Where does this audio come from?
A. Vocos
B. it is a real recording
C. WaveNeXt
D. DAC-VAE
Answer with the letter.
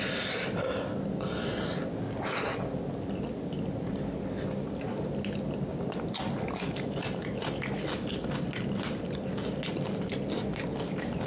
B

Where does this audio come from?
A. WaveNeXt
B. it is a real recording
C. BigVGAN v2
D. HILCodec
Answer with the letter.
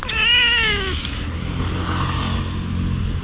B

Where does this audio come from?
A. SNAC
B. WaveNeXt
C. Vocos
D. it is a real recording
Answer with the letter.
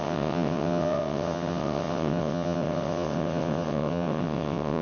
B